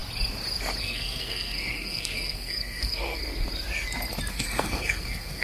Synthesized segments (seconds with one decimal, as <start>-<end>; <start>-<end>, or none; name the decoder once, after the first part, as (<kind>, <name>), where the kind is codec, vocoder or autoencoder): 0.8-3.2 (codec, SNAC); 4.3-5.4